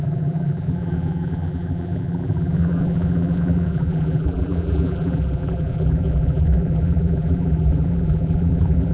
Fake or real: fake